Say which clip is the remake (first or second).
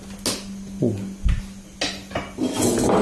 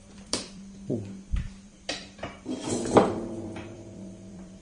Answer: second